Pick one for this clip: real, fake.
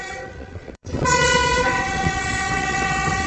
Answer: fake